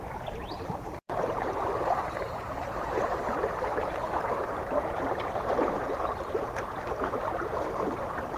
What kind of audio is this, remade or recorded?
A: remade